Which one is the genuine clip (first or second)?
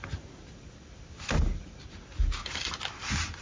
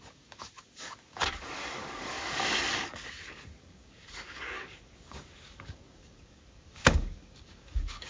first